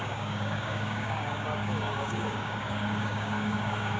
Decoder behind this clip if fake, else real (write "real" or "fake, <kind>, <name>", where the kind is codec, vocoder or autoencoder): fake, codec, DAC